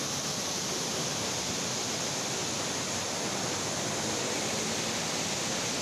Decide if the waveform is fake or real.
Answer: real